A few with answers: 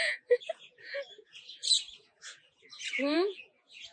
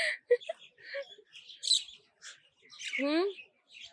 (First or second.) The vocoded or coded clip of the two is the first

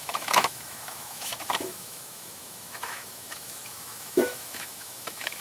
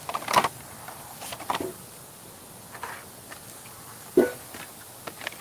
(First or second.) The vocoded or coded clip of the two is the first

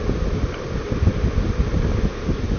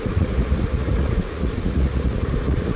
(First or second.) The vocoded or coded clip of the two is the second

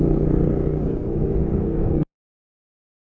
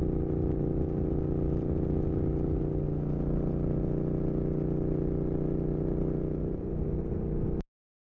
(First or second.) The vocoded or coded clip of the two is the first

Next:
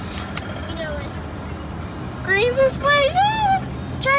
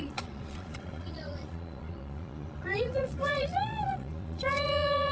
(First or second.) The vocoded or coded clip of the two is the second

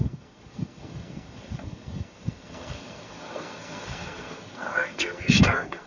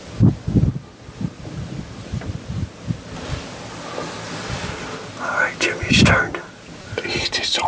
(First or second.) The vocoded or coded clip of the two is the first